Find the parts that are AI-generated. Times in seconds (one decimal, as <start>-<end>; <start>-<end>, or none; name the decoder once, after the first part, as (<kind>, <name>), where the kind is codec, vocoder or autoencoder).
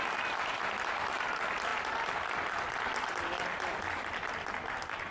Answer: none